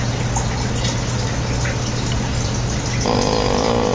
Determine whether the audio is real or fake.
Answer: real